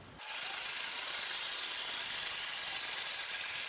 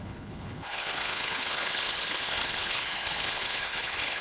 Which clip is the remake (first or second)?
second